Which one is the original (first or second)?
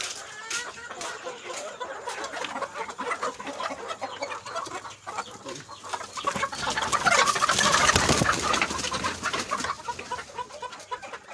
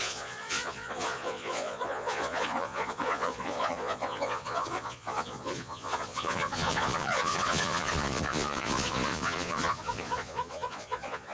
first